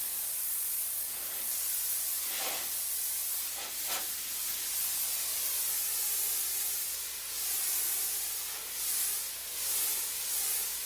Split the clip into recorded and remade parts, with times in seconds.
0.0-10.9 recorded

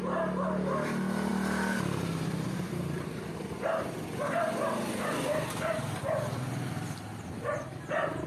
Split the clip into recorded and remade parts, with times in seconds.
0.0-8.3 recorded